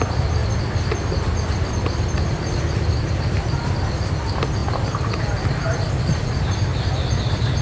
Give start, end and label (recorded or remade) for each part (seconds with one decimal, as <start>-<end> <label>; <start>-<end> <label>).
0.0-7.6 recorded

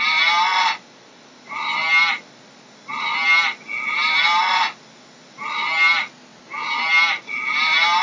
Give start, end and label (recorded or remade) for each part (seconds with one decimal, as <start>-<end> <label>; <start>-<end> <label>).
0.0-8.0 recorded

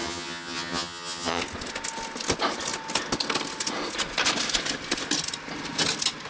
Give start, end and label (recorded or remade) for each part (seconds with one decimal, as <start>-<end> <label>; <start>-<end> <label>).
0.0-1.4 remade; 1.4-6.3 recorded